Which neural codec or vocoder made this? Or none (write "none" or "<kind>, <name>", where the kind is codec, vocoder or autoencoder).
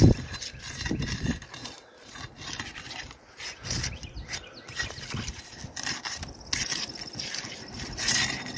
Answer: none